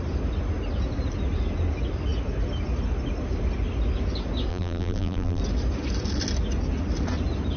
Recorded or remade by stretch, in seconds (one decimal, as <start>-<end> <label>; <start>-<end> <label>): 0.0-4.5 recorded; 4.5-5.4 remade; 5.4-7.6 recorded